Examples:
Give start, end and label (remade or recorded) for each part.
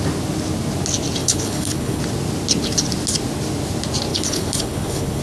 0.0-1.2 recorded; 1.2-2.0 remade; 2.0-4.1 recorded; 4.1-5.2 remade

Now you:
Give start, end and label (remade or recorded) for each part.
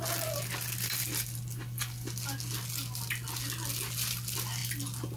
0.0-5.2 recorded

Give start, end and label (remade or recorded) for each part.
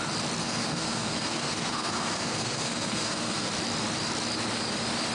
0.0-0.4 recorded; 0.4-3.5 remade; 3.5-5.1 recorded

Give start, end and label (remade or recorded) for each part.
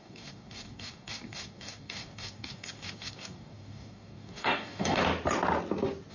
0.0-5.0 remade; 5.0-6.1 recorded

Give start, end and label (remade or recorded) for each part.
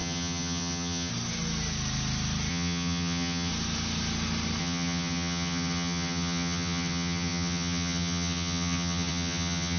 0.0-1.1 remade; 1.1-2.5 recorded; 2.5-3.5 remade; 3.5-4.6 recorded; 4.6-9.8 remade